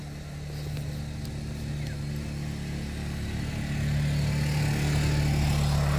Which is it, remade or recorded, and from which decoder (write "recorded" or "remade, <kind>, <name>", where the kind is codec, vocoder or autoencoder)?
recorded